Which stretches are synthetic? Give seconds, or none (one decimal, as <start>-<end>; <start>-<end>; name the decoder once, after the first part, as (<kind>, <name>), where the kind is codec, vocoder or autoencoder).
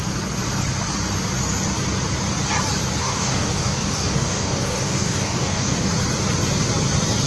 3.0-5.9 (codec, DAC)